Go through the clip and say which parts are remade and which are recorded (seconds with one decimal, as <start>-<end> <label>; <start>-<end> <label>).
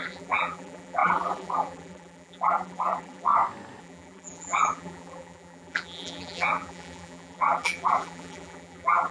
0.0-3.3 remade; 3.3-3.8 recorded; 3.8-9.1 remade